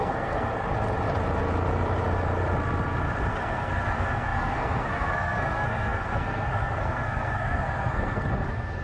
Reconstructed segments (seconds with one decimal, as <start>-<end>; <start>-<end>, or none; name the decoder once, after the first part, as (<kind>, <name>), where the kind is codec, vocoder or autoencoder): 0.0-0.5 (codec, SNAC); 3.3-8.8